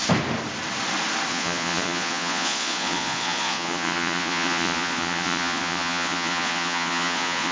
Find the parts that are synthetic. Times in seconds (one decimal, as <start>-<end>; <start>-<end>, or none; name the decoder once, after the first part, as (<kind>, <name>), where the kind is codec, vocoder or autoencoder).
1.3-7.5 (vocoder, Vocos)

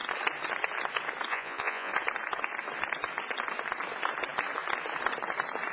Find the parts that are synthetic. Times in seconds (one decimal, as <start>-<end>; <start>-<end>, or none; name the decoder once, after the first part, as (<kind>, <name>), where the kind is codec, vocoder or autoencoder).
1.3-1.9 (vocoder, Vocos)

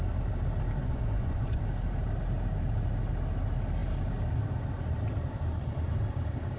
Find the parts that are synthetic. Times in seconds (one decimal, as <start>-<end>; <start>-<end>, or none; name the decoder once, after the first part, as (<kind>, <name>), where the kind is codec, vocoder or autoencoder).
0.8-1.6 (vocoder, Vocos)